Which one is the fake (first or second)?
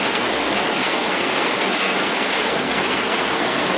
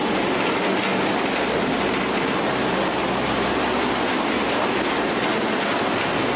first